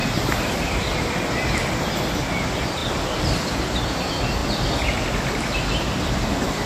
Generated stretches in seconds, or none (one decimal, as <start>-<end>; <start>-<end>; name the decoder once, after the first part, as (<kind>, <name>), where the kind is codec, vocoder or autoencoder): 0.0-0.5 (vocoder, BigVGAN v2)